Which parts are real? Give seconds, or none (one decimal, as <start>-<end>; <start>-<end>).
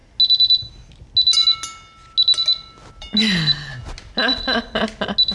0.0-5.3